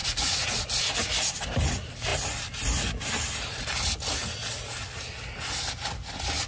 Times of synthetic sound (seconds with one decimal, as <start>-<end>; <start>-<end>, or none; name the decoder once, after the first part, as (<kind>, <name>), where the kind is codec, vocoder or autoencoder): 0.0-0.8 (vocoder, Vocos)